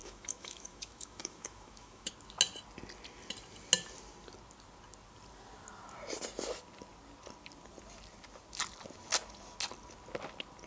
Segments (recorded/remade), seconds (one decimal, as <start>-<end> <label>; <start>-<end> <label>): 0.0-2.1 remade; 2.1-10.7 recorded